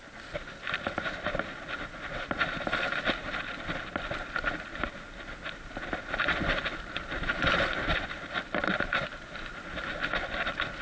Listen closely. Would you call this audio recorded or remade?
recorded